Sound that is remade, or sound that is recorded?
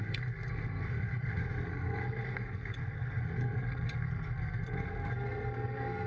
remade